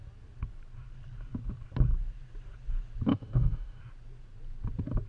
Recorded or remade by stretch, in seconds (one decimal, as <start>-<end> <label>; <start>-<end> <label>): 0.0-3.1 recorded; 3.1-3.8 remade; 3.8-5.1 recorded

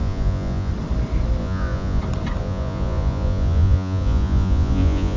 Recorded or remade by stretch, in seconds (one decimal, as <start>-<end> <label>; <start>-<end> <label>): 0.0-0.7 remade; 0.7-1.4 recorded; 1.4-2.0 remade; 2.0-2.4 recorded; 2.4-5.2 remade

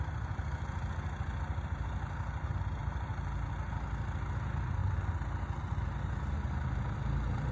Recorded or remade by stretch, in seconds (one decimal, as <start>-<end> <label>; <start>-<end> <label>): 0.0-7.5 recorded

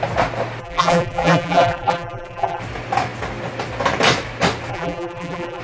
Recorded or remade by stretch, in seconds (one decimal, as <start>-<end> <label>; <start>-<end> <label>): 0.0-0.6 recorded; 0.6-2.6 remade; 2.6-4.7 recorded; 4.7-5.6 remade

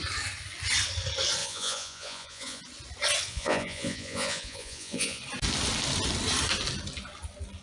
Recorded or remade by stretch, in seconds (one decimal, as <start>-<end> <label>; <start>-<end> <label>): 0.0-1.4 recorded; 1.4-2.6 remade; 2.6-3.3 recorded; 3.3-5.2 remade; 5.2-7.6 recorded

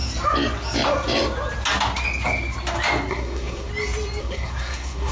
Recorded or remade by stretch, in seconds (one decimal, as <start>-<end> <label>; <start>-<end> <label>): 0.0-3.1 recorded; 3.1-3.7 remade; 3.7-4.2 recorded; 4.2-5.1 remade